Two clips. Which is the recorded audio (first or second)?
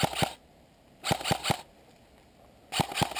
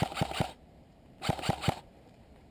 first